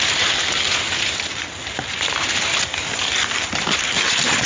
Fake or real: real